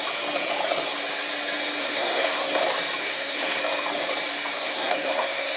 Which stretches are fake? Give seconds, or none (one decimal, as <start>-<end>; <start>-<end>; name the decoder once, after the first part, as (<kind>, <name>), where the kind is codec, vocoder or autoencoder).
1.8-2.6 (codec, SNAC); 3.0-3.6; 4.6-5.6